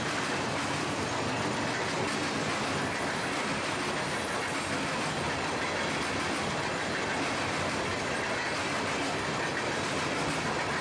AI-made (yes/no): no